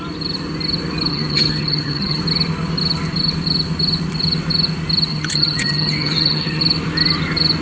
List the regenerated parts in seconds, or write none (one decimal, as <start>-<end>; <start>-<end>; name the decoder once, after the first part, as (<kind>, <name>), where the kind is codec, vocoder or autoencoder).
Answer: 1.1-2.2 (vocoder, HiFi-GAN); 5.1-6.6